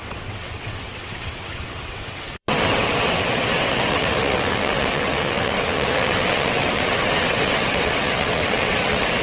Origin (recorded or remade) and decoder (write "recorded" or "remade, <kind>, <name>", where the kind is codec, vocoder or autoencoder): remade, vocoder, WaveNeXt